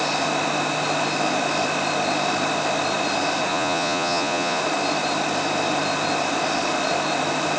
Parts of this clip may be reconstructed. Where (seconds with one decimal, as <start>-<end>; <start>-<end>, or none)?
3.5-4.6